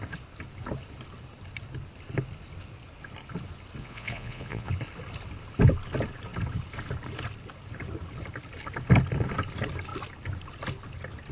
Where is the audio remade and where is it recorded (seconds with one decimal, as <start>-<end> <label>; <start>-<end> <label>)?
0.0-3.8 recorded; 3.8-4.7 remade; 4.7-11.3 recorded